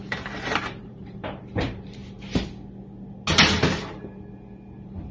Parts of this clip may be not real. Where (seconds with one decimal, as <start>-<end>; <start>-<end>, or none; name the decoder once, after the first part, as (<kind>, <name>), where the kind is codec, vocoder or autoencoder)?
0.0-2.0 (vocoder, BigVGAN v2)